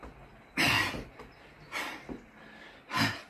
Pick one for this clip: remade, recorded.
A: recorded